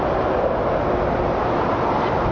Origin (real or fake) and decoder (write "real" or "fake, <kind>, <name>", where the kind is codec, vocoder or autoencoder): real